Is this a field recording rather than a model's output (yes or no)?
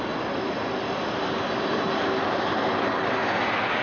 yes